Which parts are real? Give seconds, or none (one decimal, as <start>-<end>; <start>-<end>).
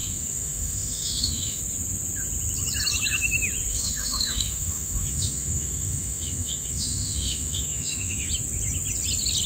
1.6-3.7; 8.3-9.5